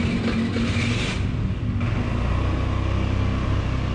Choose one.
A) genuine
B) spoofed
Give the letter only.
A